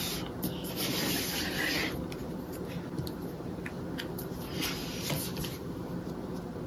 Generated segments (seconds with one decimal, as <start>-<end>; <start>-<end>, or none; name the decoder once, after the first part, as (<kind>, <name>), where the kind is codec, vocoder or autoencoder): none